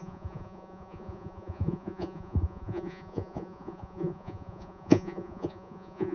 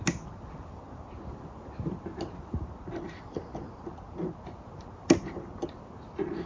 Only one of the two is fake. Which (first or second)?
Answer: first